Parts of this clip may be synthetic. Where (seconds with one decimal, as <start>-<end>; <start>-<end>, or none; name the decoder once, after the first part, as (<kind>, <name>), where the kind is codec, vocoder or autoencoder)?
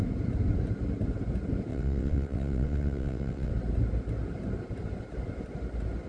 1.7-3.5 (vocoder, WaveNeXt)